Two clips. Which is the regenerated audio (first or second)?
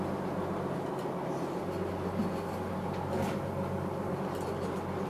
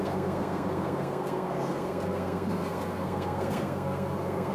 second